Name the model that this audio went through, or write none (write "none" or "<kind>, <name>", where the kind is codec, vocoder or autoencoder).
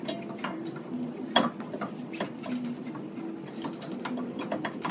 none